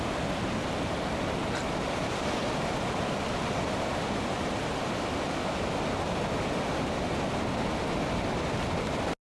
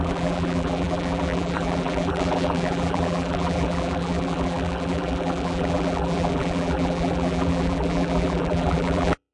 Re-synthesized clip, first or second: second